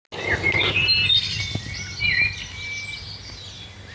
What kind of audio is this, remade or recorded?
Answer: recorded